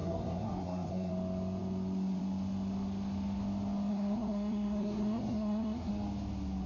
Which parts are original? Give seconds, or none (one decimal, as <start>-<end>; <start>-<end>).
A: 1.1-3.9; 5.9-6.7